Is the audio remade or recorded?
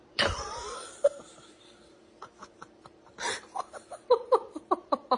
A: remade